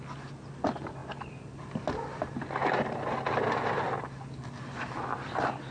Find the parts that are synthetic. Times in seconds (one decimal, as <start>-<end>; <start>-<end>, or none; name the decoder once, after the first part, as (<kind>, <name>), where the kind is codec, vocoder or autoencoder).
none